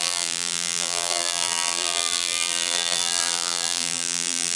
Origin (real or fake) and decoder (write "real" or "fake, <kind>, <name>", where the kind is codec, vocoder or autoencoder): fake, vocoder, BigVGAN v2